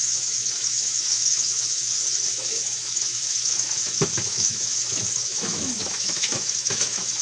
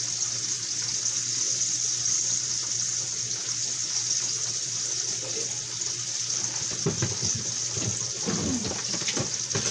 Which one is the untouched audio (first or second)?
second